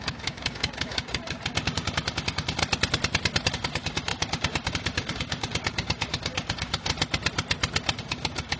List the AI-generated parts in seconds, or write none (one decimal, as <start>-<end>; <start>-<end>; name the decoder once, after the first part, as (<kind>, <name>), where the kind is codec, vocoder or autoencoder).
0.0-2.6 (codec, DAC); 3.5-6.9; 8.0-8.6